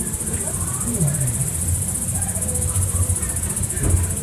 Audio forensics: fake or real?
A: fake